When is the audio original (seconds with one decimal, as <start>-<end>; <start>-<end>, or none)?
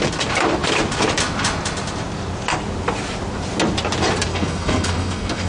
0.0-4.3